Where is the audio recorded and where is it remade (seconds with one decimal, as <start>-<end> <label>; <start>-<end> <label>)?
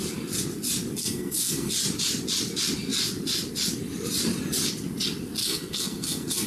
0.0-1.0 recorded; 1.0-1.7 remade; 1.7-5.4 recorded; 5.4-6.5 remade